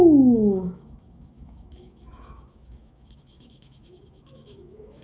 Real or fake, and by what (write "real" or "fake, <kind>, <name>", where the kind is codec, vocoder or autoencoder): fake, autoencoder, DAC-VAE